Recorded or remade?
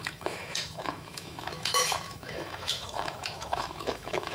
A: remade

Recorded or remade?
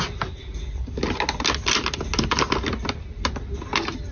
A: recorded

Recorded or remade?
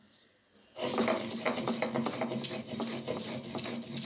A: recorded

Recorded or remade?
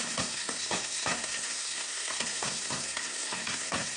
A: remade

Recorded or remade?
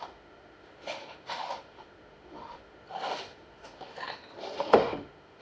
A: remade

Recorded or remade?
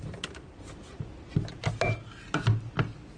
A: recorded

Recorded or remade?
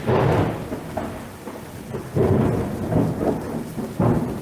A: recorded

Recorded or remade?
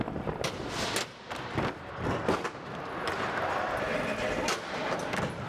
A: recorded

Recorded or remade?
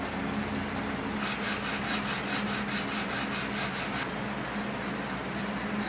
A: recorded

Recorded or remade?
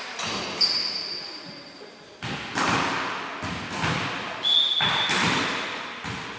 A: recorded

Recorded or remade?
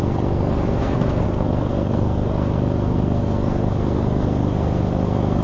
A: remade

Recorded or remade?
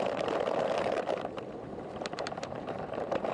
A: remade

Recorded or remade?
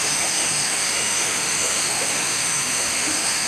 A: remade